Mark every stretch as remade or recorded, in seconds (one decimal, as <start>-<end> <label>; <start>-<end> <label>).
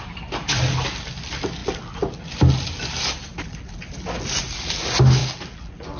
0.0-6.0 recorded